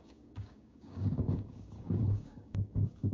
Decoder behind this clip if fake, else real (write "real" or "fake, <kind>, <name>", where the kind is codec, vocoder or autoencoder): fake, codec, DAC